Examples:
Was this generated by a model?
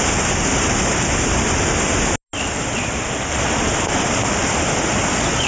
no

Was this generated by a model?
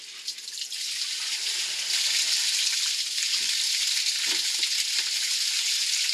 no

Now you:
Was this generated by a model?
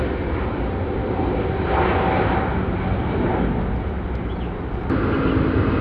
no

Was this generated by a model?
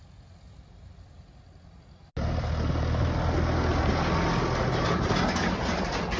no